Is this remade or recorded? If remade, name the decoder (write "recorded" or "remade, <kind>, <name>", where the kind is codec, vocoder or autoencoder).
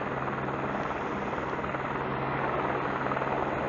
recorded